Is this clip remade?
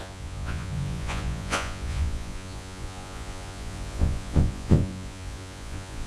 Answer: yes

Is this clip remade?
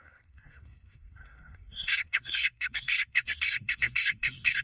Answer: yes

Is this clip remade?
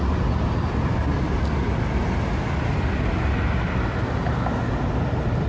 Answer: no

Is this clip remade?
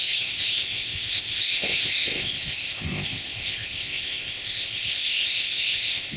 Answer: yes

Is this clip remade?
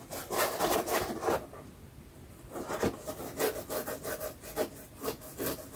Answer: no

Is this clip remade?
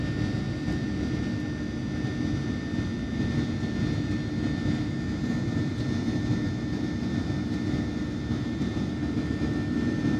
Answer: no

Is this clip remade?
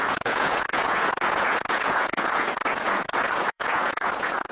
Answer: yes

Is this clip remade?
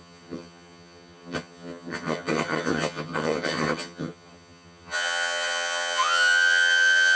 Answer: yes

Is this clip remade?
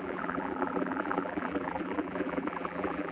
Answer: yes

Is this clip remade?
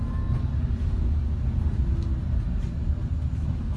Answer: no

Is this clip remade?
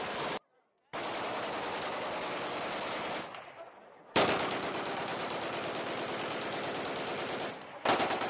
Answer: no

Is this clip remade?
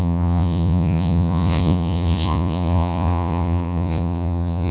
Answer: yes